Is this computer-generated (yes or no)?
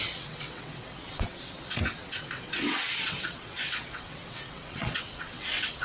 yes